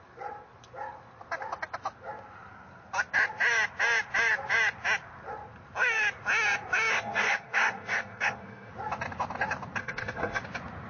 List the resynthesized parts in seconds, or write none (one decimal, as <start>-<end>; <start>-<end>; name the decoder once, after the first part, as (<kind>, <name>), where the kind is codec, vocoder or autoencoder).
6.9-8.7 (codec, SNAC); 9.8-10.4